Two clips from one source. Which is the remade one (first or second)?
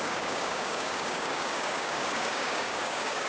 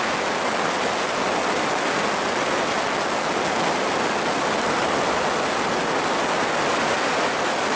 first